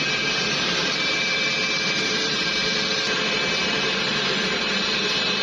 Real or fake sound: fake